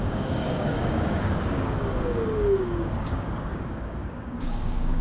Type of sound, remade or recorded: remade